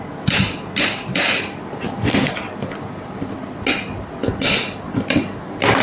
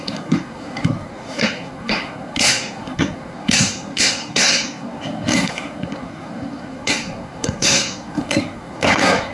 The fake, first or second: second